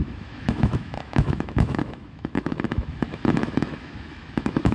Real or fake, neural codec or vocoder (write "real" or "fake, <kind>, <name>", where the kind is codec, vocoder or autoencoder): fake, autoencoder, DAC-VAE